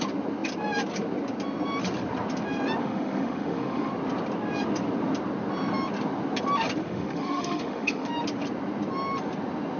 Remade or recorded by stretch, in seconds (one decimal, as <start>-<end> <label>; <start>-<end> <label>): 0.0-2.8 recorded; 2.8-3.9 remade; 3.9-6.8 recorded; 6.8-8.1 remade; 8.1-9.8 recorded